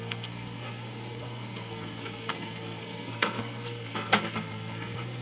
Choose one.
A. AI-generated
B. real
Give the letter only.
A